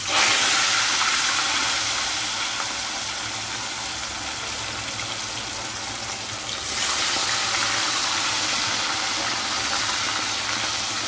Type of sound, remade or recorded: recorded